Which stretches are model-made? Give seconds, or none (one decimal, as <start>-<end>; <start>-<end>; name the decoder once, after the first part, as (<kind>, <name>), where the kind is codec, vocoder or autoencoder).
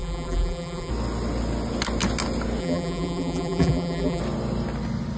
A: 0.0-0.9 (vocoder, BigVGAN v2); 2.6-4.2